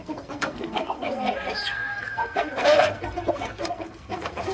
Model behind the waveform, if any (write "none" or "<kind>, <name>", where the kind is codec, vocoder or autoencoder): codec, SNAC